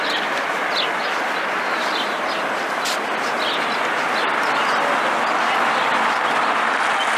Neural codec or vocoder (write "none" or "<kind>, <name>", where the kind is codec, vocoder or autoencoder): none